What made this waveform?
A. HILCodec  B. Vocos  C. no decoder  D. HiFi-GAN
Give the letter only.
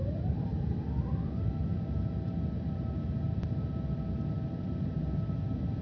C